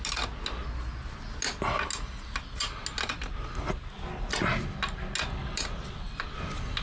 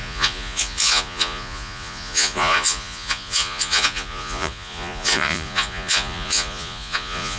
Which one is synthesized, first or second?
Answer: second